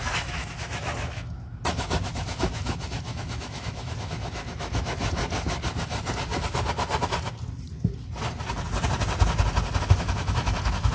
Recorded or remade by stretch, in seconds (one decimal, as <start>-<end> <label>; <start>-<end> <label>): 0.0-5.2 remade; 5.2-9.8 recorded; 9.8-10.9 remade